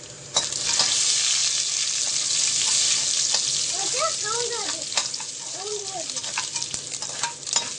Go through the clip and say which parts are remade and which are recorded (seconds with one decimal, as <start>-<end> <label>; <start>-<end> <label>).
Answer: 0.0-5.0 recorded; 5.0-5.7 remade; 5.7-7.8 recorded